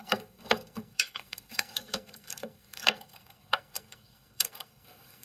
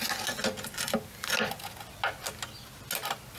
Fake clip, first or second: first